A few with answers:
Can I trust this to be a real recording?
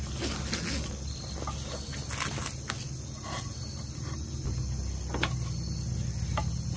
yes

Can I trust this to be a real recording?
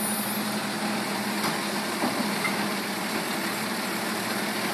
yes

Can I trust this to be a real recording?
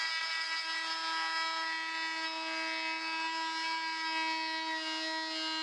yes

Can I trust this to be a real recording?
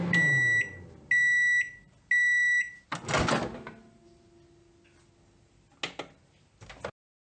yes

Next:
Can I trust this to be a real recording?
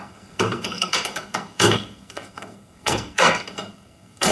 no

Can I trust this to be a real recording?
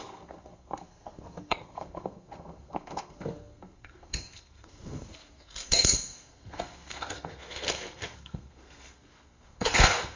no